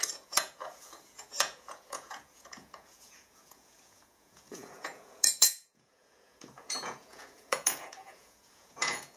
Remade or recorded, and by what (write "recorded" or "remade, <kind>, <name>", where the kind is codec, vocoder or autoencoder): remade, vocoder, Vocos